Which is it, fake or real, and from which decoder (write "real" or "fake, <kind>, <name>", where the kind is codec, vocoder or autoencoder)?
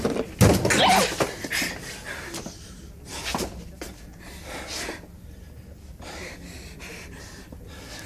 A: real